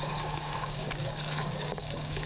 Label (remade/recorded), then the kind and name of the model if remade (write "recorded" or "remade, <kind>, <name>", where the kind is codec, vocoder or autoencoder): remade, codec, DAC